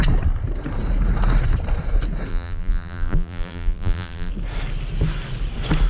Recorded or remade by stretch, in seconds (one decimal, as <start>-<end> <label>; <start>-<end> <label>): 0.0-2.3 recorded; 2.3-4.3 remade; 4.3-5.9 recorded